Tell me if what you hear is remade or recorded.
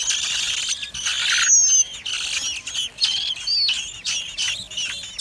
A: recorded